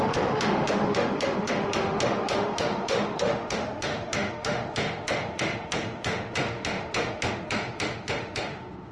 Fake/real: fake